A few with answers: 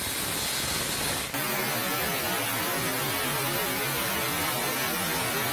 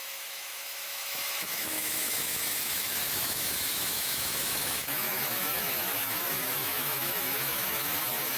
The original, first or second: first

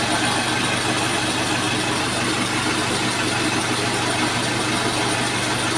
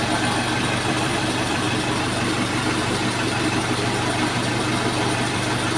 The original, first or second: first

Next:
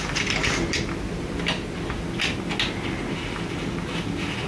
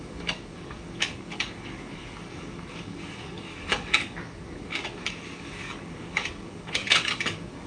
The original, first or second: first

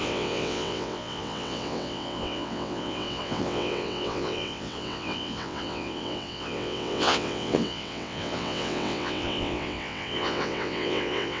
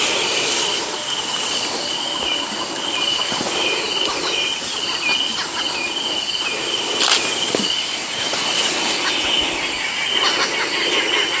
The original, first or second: second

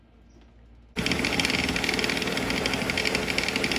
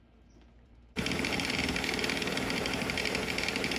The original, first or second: first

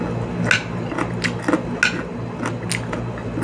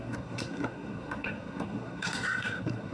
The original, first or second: first